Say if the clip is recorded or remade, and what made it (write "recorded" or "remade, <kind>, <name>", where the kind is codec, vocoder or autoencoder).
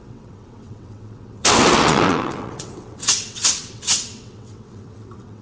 remade, vocoder, WaveNeXt